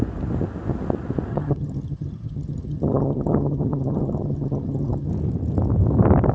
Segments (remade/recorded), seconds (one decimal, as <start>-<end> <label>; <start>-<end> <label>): 0.0-1.3 recorded; 1.3-5.1 remade; 5.1-6.3 recorded